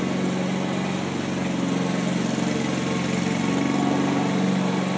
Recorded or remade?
recorded